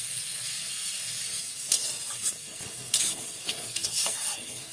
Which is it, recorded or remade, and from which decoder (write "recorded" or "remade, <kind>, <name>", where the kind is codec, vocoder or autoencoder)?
remade, codec, SNAC